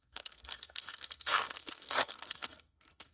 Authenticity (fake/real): fake